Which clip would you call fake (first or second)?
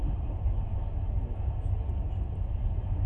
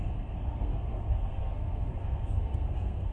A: second